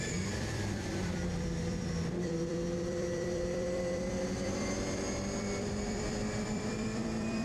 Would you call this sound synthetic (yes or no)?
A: yes